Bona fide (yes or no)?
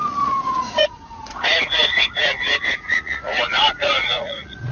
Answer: no